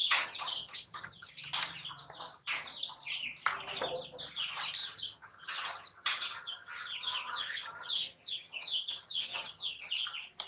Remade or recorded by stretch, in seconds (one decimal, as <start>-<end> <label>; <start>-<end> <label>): 0.0-1.3 remade; 1.3-4.8 recorded; 4.8-9.9 remade; 9.9-10.5 recorded